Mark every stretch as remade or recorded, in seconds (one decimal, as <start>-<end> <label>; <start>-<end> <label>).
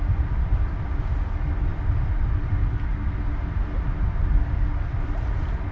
0.0-5.7 recorded